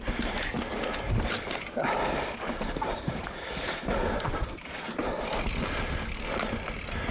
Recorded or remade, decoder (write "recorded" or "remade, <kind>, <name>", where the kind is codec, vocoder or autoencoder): recorded